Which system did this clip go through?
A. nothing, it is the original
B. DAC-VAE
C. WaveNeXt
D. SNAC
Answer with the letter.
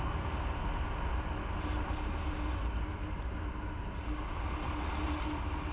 A